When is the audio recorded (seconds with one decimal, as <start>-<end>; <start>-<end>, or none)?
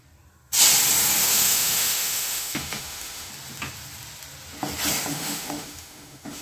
0.0-1.2; 3.3-5.1